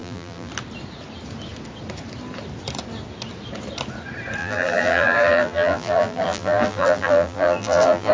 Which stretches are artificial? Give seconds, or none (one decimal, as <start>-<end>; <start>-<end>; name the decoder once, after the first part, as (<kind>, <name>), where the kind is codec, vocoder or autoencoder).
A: 0.0-0.5 (vocoder, BigVGAN v2); 4.4-8.1

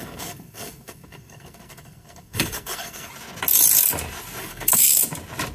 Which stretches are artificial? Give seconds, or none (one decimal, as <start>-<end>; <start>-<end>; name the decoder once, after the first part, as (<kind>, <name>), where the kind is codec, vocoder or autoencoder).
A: 0.0-3.1 (codec, SNAC); 4.4-5.0

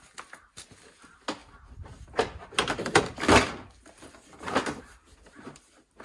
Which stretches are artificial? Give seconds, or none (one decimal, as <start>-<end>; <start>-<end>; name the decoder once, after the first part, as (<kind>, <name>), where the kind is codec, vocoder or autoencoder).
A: none

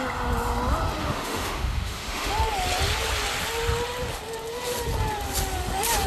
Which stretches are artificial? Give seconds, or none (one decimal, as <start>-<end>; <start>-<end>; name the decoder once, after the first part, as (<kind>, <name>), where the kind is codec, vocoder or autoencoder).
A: 1.0-2.3 (autoencoder, DAC-VAE)